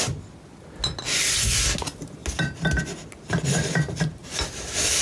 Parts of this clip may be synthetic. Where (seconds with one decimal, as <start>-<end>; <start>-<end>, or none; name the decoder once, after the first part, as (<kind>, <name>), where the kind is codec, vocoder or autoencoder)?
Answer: 4.2-5.0 (vocoder, BigVGAN v2)